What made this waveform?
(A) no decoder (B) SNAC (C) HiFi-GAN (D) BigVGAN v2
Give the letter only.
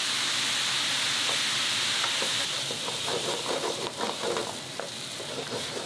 A